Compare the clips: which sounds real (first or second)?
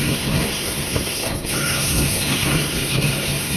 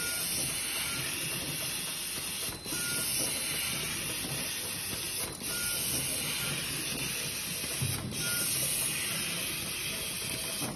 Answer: second